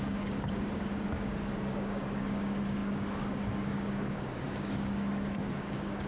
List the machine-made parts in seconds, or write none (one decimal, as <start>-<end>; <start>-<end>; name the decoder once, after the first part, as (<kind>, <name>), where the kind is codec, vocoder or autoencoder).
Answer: 0.0-6.1 (codec, DAC)